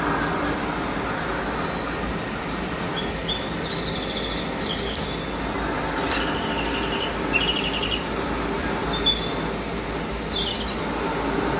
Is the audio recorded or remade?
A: recorded